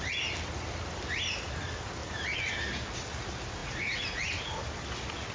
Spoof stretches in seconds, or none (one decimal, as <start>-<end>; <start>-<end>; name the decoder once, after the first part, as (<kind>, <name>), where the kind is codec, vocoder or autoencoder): 3.6-4.6 (vocoder, Vocos)